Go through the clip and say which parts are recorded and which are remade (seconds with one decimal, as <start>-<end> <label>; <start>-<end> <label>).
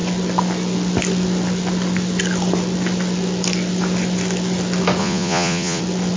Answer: 0.0-5.0 recorded; 5.0-5.8 remade; 5.8-6.2 recorded